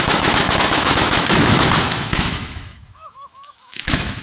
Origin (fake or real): fake